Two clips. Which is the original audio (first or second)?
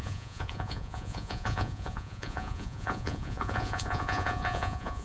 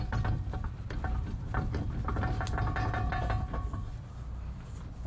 second